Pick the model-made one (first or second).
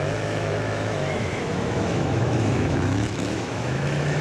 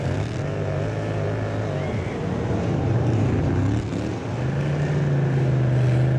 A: first